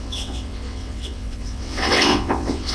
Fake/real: fake